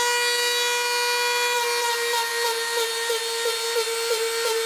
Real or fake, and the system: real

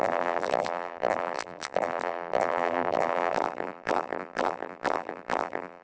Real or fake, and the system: fake, vocoder, BigVGAN v2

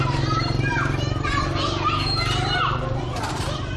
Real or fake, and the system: fake, vocoder, BigVGAN v2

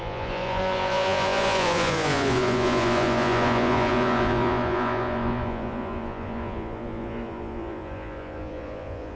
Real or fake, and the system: fake, vocoder, Vocos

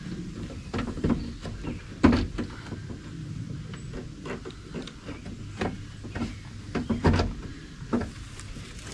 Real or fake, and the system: real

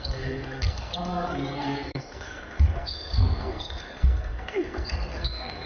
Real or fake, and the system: fake, codec, SNAC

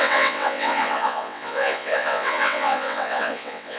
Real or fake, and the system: fake, vocoder, WaveNeXt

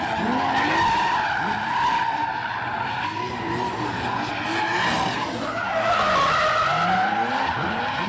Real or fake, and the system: real